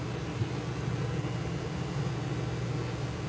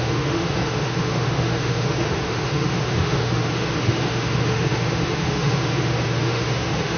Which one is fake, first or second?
second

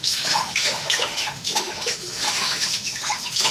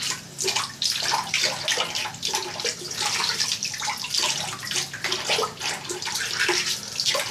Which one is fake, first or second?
first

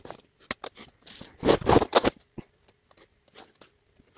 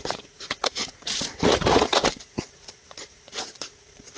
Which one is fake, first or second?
second